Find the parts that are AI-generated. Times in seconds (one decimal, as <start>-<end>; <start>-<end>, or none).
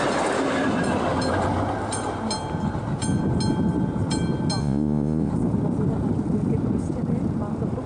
4.6-5.3